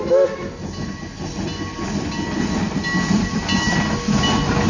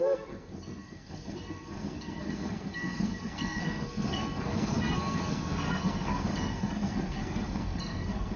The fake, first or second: second